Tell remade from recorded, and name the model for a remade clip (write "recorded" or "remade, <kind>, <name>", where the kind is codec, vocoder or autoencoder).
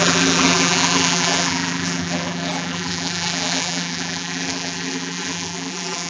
remade, vocoder, BigVGAN v2